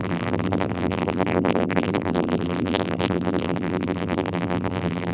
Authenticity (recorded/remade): remade